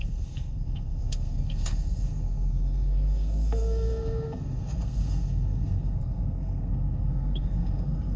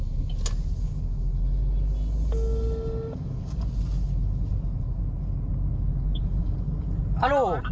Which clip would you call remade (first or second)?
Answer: first